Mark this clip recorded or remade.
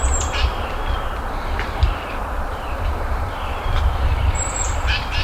remade